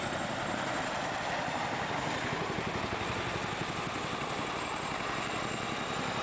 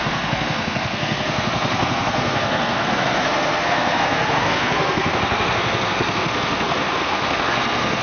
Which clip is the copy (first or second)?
second